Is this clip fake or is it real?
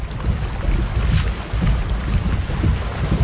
real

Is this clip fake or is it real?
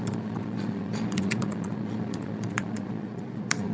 fake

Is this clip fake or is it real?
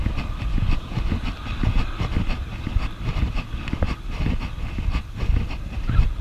real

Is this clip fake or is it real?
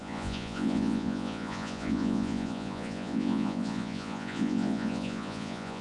fake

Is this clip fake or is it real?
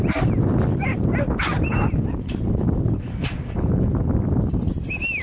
real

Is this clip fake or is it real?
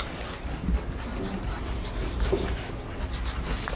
real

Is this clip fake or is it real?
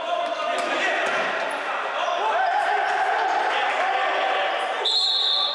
real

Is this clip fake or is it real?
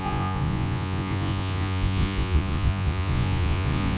fake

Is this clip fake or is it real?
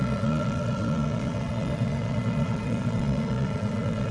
fake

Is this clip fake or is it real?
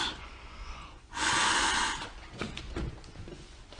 fake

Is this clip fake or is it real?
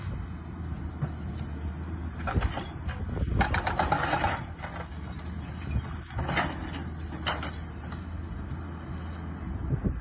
real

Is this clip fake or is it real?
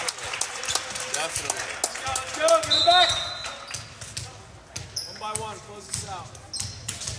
real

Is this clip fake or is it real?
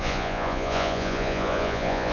fake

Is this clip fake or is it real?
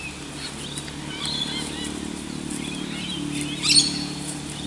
real